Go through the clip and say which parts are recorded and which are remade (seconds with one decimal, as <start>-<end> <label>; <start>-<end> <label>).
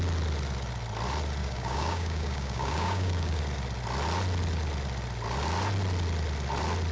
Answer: 0.0-1.4 recorded; 1.4-3.4 remade; 3.4-6.9 recorded